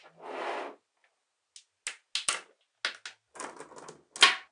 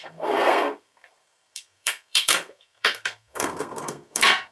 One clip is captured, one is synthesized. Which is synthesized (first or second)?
second